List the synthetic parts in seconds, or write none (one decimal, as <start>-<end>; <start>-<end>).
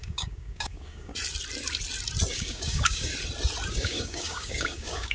0.0-1.1; 2.3-3.1; 3.7-5.1